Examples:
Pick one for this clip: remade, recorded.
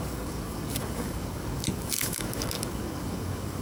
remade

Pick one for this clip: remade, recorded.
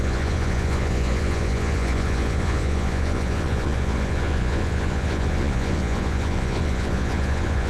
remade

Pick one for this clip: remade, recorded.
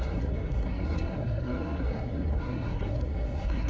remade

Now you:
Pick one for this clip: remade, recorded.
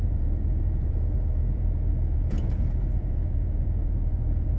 remade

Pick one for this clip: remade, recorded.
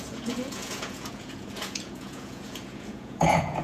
remade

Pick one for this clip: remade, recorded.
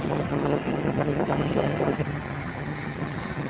remade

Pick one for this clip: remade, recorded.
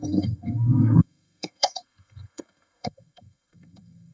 remade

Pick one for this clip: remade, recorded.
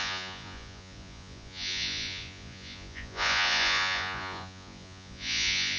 remade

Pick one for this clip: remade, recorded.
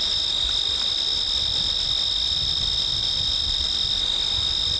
recorded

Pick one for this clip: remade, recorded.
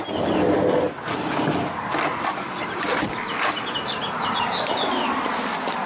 recorded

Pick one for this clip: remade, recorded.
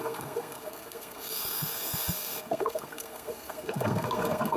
remade